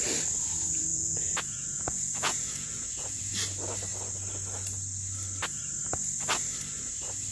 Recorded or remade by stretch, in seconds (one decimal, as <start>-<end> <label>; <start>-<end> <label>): 0.0-0.9 recorded; 0.9-3.2 remade; 3.2-7.3 recorded